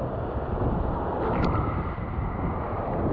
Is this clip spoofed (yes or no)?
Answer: no